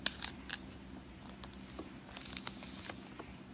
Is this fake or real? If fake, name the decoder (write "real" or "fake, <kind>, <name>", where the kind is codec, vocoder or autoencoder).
real